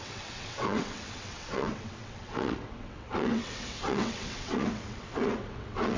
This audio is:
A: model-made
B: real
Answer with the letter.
A